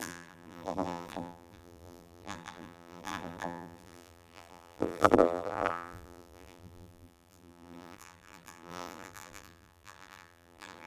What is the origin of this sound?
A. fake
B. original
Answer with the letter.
A